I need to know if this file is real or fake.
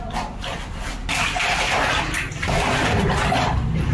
real